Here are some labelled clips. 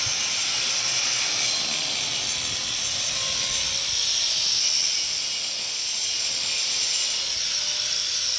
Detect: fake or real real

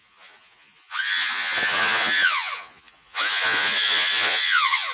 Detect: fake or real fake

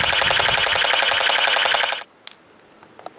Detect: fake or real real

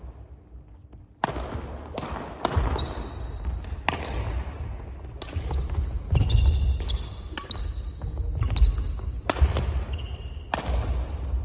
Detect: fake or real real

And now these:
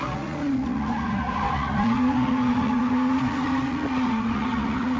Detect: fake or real fake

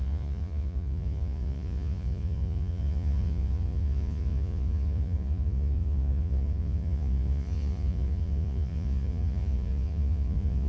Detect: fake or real fake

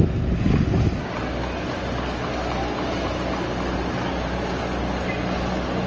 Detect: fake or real real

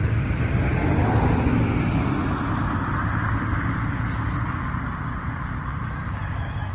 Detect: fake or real real